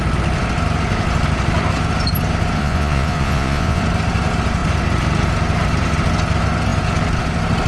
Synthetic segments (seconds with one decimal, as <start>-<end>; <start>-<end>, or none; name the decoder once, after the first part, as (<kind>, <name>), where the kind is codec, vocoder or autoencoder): 2.6-3.8 (vocoder, Vocos)